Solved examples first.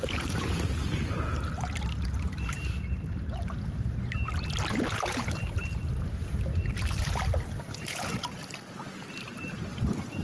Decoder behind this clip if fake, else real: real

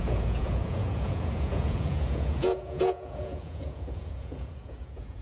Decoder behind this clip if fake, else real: fake, vocoder, Vocos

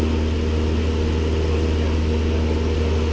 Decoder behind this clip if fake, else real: real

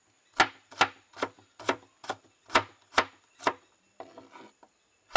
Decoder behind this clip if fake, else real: real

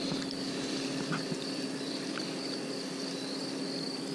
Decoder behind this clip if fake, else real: real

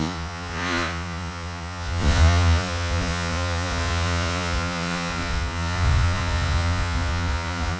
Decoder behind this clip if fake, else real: fake, vocoder, Vocos